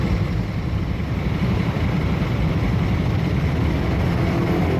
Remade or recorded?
recorded